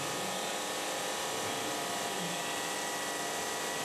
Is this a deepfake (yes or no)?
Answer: no